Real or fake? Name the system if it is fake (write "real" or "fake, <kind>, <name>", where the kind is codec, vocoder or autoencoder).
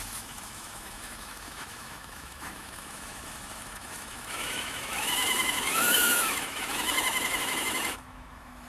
fake, autoencoder, DAC-VAE